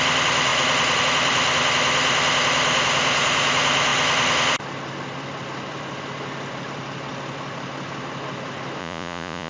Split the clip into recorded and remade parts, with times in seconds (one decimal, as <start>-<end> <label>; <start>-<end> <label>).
0.0-8.8 recorded; 8.8-9.5 remade